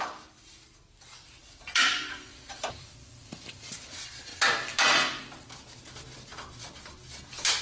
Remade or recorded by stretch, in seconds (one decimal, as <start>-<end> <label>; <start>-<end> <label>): 0.0-4.3 remade; 4.3-7.6 recorded